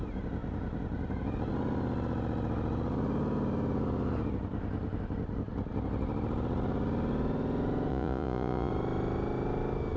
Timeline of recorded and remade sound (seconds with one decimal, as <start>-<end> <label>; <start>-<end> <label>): 0.0-7.9 recorded; 7.9-8.7 remade; 8.7-10.0 recorded